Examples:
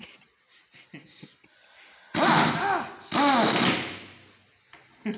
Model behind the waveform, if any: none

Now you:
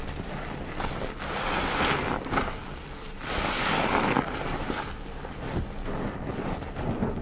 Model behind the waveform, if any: none